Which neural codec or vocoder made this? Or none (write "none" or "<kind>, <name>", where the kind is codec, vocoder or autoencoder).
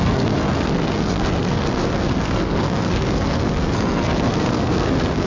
codec, SNAC